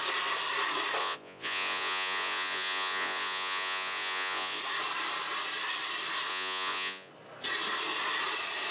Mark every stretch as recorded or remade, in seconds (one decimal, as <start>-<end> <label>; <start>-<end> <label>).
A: 0.0-1.0 recorded; 1.0-4.6 remade; 4.6-6.3 recorded; 6.3-7.1 remade; 7.1-8.7 recorded